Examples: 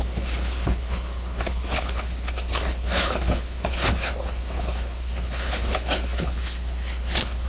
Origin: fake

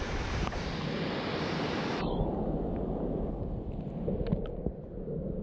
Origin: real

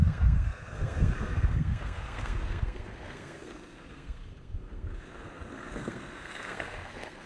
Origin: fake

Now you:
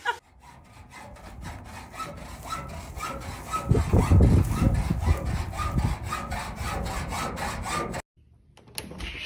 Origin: real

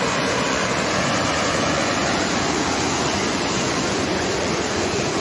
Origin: fake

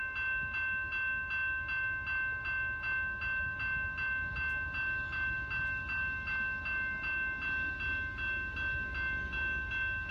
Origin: real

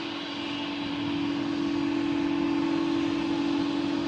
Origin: real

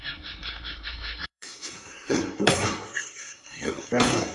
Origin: fake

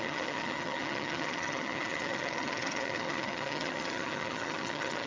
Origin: fake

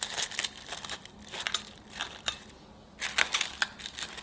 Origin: real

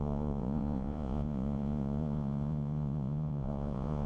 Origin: fake